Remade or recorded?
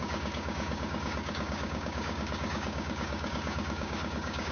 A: remade